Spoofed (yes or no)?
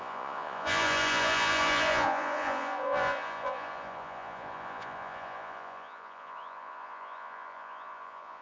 yes